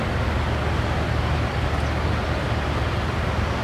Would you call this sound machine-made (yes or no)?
no